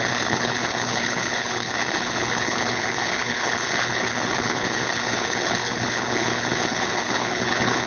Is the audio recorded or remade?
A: remade